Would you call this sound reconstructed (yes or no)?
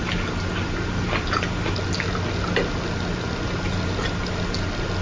no